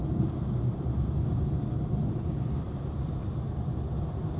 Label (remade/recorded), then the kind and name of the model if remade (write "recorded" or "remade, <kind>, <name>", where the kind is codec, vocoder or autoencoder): recorded